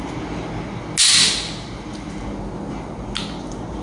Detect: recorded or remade recorded